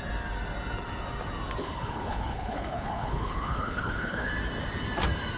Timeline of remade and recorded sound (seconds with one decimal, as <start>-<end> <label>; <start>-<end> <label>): 0.0-1.6 recorded; 1.6-4.3 remade; 4.3-5.4 recorded